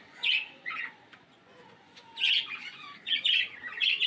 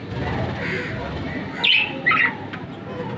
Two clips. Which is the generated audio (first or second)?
first